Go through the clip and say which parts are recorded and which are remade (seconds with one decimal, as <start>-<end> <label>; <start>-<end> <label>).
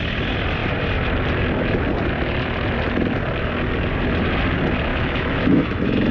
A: 0.0-4.9 recorded; 4.9-6.1 remade